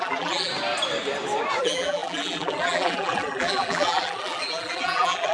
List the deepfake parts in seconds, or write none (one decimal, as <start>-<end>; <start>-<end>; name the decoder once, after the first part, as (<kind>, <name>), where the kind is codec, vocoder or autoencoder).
0.0-0.5 (vocoder, BigVGAN v2); 1.6-5.3